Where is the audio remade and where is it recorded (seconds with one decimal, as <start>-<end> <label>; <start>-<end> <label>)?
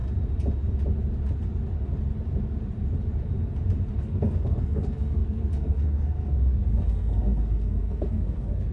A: 0.0-4.0 recorded; 4.0-8.7 remade